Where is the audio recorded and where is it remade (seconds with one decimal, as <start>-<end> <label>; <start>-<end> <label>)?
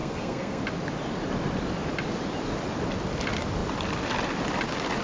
0.0-0.6 remade; 0.6-5.0 recorded